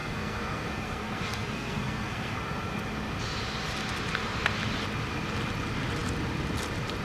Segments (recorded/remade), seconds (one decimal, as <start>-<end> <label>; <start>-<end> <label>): 0.0-2.4 remade; 2.4-7.0 recorded